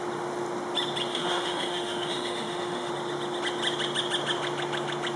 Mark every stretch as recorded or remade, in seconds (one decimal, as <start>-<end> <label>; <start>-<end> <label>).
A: 0.0-1.1 recorded; 1.1-2.9 remade; 2.9-5.2 recorded